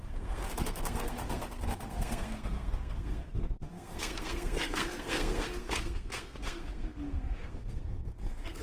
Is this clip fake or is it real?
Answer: fake